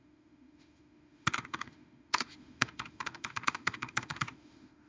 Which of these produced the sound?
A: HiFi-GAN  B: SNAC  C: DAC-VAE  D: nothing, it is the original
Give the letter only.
C